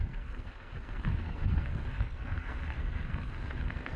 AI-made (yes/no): yes